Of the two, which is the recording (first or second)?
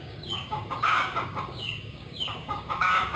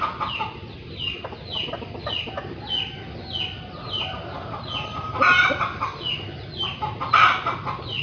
second